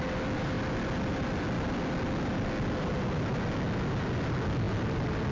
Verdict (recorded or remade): recorded